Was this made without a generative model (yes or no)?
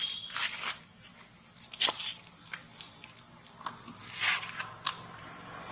yes